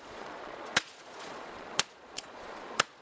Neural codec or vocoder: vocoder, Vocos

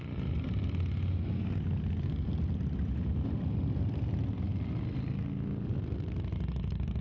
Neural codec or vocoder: none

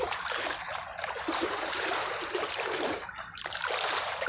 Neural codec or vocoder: vocoder, BigVGAN v2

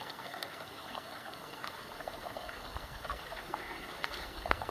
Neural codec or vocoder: codec, SNAC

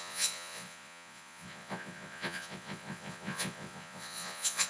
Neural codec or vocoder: vocoder, Vocos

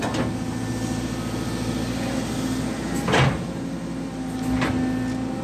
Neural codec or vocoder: none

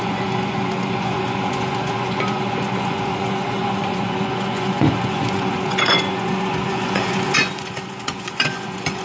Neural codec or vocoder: vocoder, Vocos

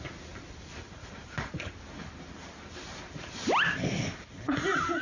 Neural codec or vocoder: none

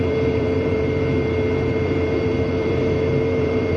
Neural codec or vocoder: vocoder, BigVGAN v2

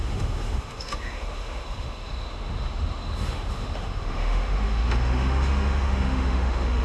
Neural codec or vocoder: autoencoder, DAC-VAE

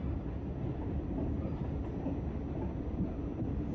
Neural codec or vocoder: none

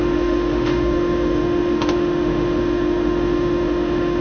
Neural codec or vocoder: autoencoder, DAC-VAE